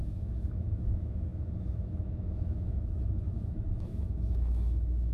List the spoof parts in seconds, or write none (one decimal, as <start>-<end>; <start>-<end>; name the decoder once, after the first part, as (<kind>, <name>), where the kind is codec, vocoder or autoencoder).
0.0-5.1 (autoencoder, DAC-VAE)